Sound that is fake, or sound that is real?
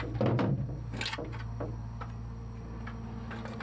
real